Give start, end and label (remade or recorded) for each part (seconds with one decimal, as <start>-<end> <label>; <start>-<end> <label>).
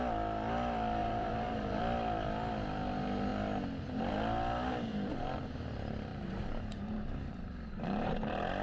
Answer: 0.0-1.0 recorded; 1.0-1.8 remade; 1.8-6.1 recorded; 6.1-8.1 remade; 8.1-8.6 recorded